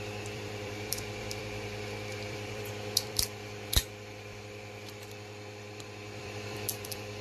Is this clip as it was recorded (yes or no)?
no